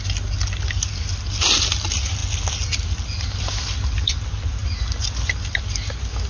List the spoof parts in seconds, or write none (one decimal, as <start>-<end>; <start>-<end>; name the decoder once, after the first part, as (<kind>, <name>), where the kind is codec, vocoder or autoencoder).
none